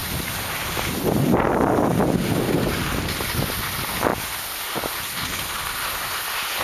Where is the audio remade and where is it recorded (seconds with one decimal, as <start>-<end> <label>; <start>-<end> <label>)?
0.0-6.6 recorded